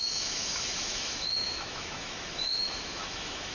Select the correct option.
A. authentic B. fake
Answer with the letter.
B